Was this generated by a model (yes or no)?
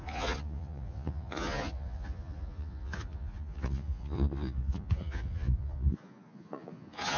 yes